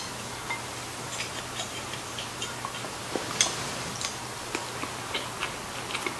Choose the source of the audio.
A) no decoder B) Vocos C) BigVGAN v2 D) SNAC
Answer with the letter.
A